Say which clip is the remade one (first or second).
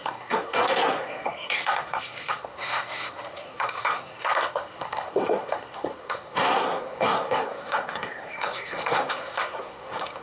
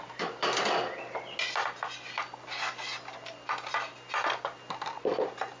first